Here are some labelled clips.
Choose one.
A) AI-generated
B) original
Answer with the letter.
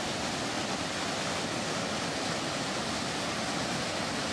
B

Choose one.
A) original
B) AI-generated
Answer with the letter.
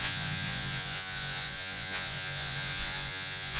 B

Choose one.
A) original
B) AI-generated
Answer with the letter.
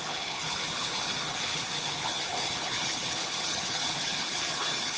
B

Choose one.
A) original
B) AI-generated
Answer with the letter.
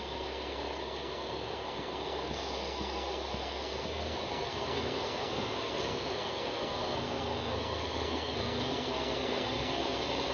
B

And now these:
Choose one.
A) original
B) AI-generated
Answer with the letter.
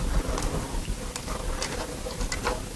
A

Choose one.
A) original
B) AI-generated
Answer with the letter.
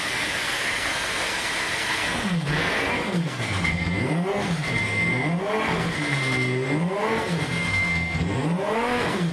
B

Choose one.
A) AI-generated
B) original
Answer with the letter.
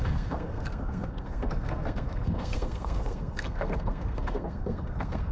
A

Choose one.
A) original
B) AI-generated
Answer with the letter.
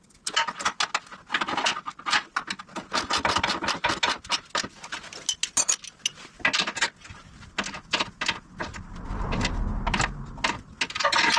A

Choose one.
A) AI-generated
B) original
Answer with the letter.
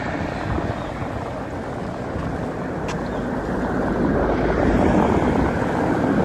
B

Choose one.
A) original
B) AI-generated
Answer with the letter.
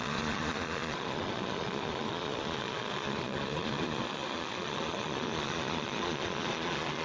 B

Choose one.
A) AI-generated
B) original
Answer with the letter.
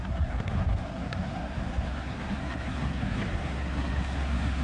A